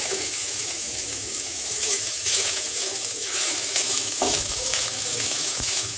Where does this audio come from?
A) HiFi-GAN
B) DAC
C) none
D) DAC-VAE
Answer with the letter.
D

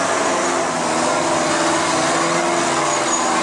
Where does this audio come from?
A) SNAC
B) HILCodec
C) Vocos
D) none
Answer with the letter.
D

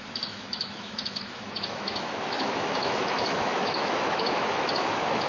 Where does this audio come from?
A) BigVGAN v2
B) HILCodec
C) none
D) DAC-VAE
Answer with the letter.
D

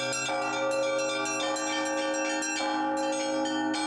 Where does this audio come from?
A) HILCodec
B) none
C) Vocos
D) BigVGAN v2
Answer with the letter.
B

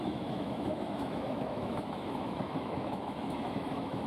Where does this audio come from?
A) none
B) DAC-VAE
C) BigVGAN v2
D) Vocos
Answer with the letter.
B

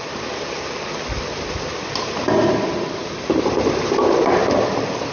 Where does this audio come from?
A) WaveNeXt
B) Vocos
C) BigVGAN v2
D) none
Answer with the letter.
C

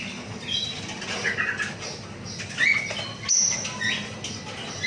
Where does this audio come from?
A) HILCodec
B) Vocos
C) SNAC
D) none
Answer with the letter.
D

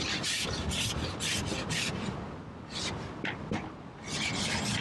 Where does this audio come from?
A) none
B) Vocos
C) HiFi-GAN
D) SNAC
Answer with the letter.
A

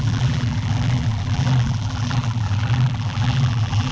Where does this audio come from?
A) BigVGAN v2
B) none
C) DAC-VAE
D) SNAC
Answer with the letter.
A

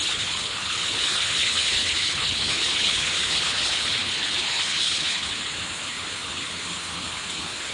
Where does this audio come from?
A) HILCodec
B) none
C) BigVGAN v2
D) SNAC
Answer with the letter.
A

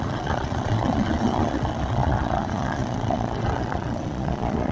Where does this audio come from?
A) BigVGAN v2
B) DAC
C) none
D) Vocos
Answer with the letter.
D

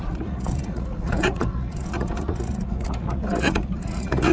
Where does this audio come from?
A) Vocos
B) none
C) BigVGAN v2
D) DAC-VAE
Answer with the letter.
A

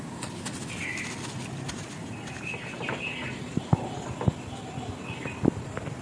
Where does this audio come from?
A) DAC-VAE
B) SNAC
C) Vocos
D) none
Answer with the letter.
D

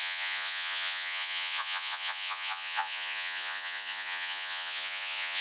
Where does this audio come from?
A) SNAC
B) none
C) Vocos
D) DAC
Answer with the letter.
C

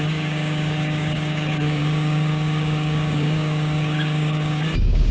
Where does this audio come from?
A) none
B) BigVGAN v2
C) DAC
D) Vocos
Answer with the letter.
C